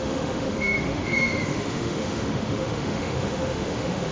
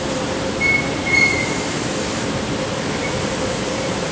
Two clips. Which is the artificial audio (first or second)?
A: first